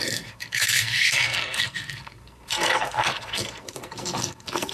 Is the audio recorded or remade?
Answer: remade